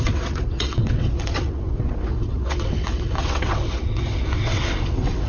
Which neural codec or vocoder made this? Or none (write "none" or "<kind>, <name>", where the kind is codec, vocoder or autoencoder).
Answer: vocoder, WaveNeXt